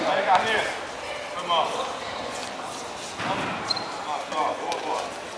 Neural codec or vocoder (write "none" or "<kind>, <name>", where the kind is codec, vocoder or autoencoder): none